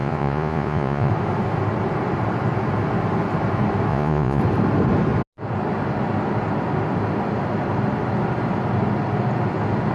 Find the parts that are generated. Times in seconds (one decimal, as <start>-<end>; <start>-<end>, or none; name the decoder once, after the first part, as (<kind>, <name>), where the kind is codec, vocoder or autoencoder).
0.0-1.1 (vocoder, Vocos); 3.9-4.4